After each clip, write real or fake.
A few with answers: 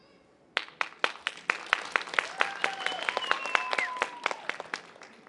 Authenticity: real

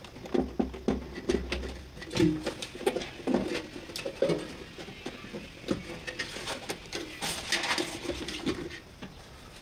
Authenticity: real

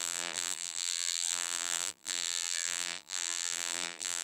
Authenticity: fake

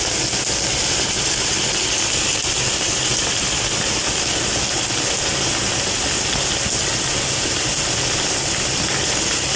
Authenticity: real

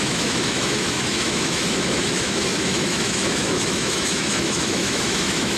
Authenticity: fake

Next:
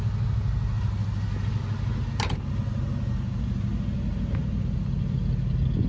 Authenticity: real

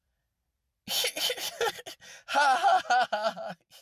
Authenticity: real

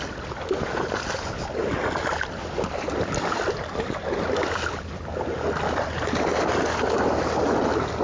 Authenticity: real